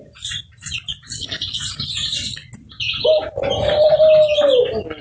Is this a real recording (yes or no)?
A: yes